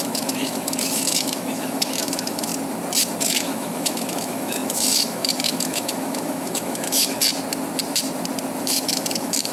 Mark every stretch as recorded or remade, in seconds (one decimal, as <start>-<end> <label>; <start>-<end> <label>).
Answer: 0.0-2.5 remade; 2.5-3.2 recorded; 3.2-7.2 remade; 7.2-8.6 recorded; 8.6-9.5 remade